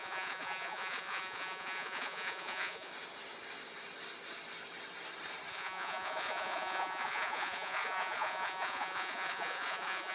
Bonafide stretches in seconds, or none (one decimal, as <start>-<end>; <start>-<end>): 2.9-5.5